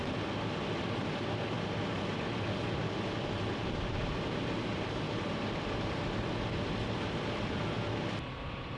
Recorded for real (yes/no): yes